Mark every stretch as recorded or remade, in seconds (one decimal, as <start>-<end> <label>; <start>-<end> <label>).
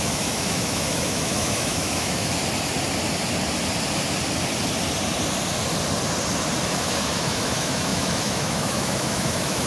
0.0-2.4 remade; 2.4-6.7 recorded; 6.7-9.7 remade